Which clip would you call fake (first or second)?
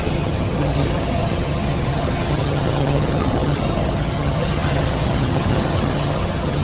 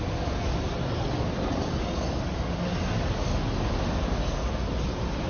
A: first